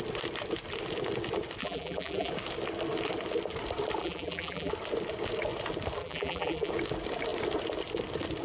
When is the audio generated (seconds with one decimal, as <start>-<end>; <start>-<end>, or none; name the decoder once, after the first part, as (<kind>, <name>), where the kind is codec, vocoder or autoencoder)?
1.6-2.3 (vocoder, BigVGAN v2); 4.0-4.7; 6.0-6.7

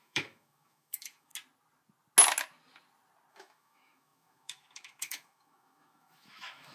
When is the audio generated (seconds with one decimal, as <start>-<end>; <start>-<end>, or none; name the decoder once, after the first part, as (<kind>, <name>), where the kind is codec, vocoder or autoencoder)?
0.0-1.3 (autoencoder, DAC-VAE); 3.3-6.7